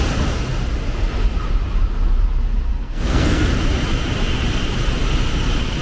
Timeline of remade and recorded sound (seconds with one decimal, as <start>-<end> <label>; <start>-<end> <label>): 0.0-2.7 recorded; 2.7-3.5 remade; 3.5-5.8 recorded